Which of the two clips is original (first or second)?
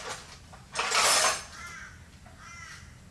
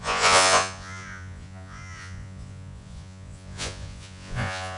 first